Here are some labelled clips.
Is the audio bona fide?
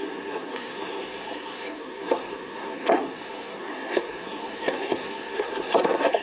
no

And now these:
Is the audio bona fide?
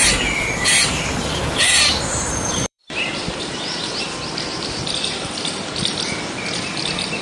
no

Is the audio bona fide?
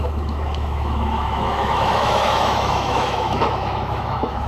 no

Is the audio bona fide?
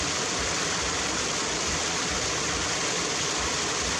yes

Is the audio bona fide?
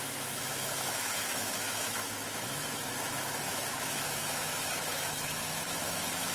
no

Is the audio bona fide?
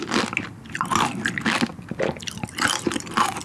yes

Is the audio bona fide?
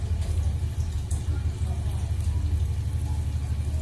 yes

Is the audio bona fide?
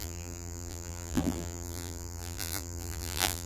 no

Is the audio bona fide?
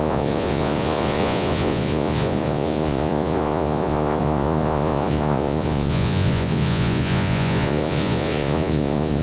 no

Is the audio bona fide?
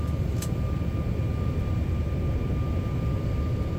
yes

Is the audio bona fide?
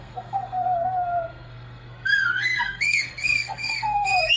no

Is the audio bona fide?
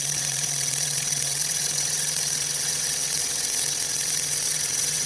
no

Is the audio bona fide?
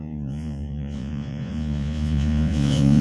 no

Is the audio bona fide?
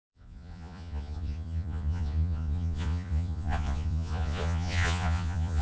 no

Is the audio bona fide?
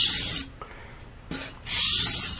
yes